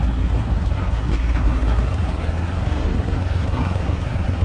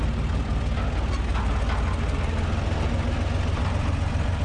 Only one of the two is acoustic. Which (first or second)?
second